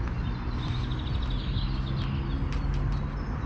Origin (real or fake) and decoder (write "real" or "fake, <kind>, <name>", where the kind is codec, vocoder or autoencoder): real